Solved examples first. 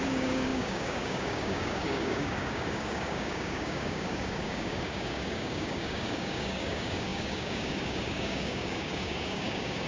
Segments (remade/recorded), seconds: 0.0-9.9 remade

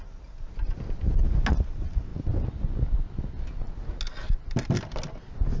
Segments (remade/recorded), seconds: 0.0-5.6 recorded

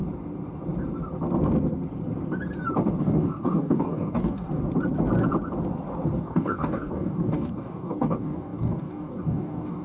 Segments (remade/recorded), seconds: 0.0-3.0 recorded; 3.0-4.6 remade; 4.6-6.2 recorded; 6.2-9.8 remade

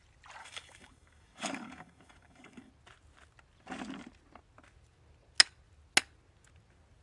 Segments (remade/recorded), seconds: 0.0-0.4 recorded; 0.4-2.7 remade; 2.7-7.0 recorded

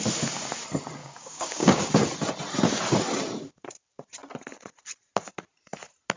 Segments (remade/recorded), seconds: 0.0-1.0 recorded; 1.0-1.9 remade; 1.9-6.2 recorded